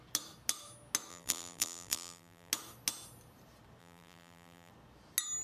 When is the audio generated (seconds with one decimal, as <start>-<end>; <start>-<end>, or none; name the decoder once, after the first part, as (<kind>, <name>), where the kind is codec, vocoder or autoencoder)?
1.1-2.5 (vocoder, BigVGAN v2); 3.8-4.7